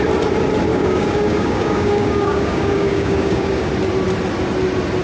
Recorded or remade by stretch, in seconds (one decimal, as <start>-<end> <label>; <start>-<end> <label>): 0.0-0.7 recorded; 0.7-3.7 remade; 3.7-5.0 recorded